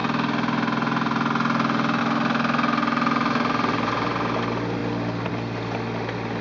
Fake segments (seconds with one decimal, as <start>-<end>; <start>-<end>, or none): none